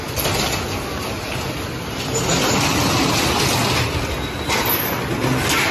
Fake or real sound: real